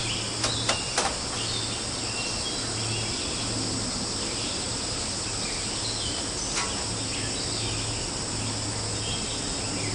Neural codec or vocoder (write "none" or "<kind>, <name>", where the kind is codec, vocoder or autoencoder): none